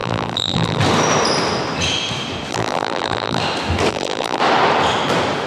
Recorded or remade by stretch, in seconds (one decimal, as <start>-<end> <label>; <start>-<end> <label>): 0.0-0.8 remade; 0.8-2.5 recorded; 2.5-3.4 remade; 3.4-3.9 recorded; 3.9-4.4 remade; 4.4-5.5 recorded

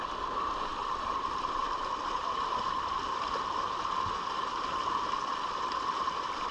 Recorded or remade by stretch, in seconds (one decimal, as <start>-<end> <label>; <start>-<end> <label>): 0.0-0.7 recorded; 0.7-4.6 remade; 4.6-5.3 recorded; 5.3-6.1 remade; 6.1-6.5 recorded

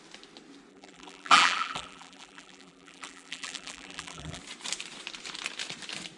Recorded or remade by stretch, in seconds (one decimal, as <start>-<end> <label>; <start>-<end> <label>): 0.0-0.7 recorded; 0.7-4.4 remade; 4.4-6.2 recorded

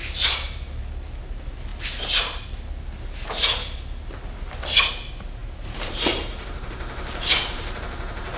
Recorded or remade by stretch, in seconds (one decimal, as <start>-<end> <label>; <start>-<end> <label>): 0.0-5.4 recorded; 5.4-7.8 remade; 7.8-8.4 recorded